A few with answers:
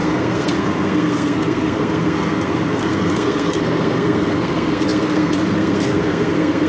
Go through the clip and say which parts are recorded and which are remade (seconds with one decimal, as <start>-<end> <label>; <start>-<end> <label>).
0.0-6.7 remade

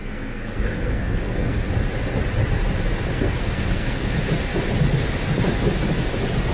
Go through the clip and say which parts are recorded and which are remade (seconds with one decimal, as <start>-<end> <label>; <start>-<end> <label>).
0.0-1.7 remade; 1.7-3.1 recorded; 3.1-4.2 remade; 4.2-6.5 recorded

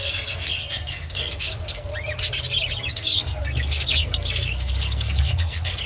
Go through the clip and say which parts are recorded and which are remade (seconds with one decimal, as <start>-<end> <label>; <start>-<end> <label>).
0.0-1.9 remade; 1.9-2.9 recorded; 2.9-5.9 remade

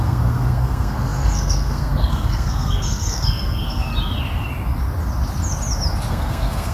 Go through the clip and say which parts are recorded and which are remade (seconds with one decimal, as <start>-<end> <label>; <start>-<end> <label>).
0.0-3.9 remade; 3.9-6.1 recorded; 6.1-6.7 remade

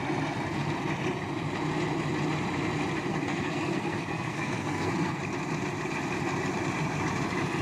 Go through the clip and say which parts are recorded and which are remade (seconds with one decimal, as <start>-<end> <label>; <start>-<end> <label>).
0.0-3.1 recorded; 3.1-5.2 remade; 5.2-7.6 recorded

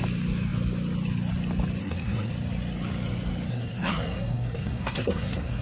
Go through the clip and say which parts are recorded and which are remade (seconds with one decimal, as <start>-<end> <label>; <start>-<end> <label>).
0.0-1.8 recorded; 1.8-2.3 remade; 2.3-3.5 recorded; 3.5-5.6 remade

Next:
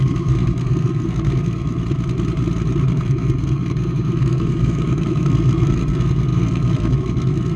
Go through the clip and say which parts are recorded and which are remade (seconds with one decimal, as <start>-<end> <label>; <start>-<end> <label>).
0.0-1.8 remade; 1.8-2.9 recorded; 2.9-7.6 remade

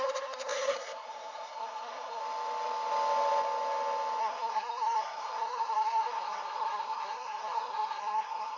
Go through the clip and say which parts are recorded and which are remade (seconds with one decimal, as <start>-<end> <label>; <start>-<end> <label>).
0.0-2.2 remade; 2.2-4.2 recorded; 4.2-8.6 remade